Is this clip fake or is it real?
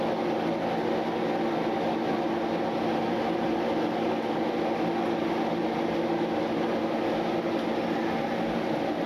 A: real